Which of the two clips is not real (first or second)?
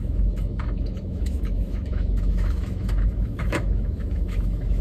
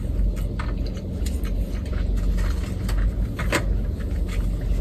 first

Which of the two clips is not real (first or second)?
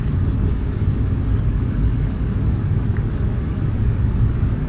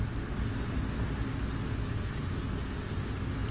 first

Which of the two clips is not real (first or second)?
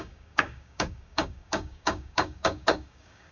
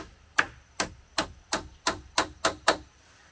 first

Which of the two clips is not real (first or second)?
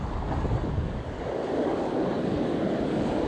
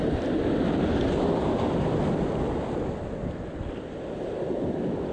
first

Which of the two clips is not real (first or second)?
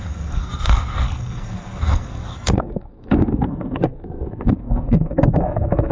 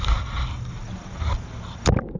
first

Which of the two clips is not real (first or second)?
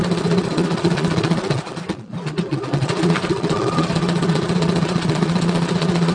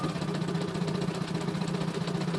first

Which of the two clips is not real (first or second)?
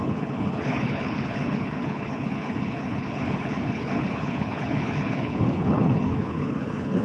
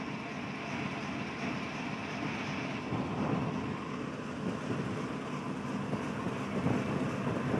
first